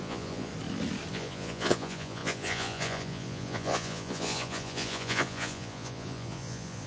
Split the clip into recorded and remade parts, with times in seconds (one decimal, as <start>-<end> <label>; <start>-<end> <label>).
0.0-0.5 remade; 0.5-1.1 recorded; 1.1-6.9 remade